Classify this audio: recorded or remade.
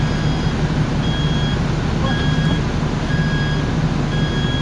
recorded